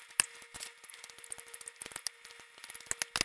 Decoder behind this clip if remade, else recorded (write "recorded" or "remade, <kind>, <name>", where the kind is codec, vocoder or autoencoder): recorded